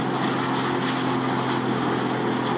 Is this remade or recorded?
recorded